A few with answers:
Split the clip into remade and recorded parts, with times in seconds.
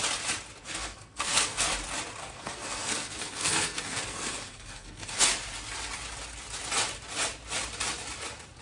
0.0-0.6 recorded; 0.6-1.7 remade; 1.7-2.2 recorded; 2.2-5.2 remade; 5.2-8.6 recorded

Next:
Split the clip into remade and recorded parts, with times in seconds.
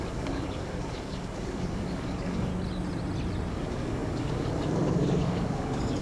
0.0-2.5 remade; 2.5-3.5 recorded; 3.5-6.0 remade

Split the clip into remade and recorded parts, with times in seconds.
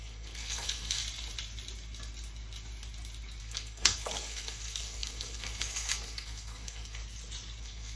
0.0-1.0 remade; 1.0-3.4 recorded; 3.4-7.0 remade; 7.0-7.6 recorded; 7.6-8.0 remade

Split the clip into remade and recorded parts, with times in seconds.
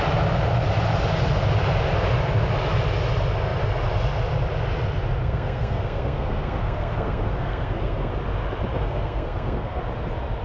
0.0-5.2 recorded; 5.2-8.1 remade; 8.1-8.7 recorded; 8.7-9.8 remade; 9.8-10.4 recorded